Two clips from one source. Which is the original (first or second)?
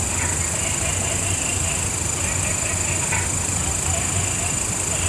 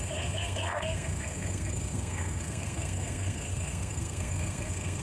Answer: first